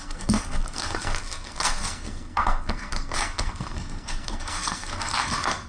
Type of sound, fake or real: fake